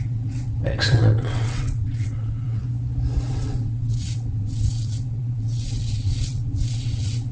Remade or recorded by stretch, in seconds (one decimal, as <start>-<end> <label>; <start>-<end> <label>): 0.0-2.6 remade; 2.6-3.3 recorded; 3.3-7.3 remade